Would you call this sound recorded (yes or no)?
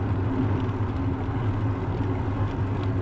yes